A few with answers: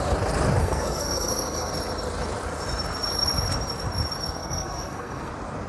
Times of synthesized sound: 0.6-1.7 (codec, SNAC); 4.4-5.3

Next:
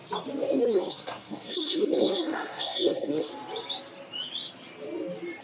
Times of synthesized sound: 0.6-3.3 (codec, SNAC)